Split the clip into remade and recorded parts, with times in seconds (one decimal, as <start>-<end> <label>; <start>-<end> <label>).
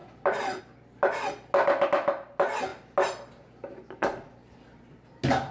0.0-5.5 recorded